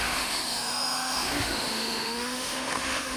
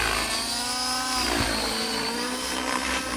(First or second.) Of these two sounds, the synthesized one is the first